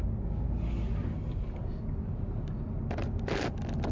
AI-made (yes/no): no